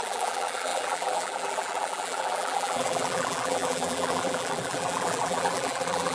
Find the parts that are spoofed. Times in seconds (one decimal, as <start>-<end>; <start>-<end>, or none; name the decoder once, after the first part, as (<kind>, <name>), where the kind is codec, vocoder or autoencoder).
0.0-6.1 (vocoder, BigVGAN v2)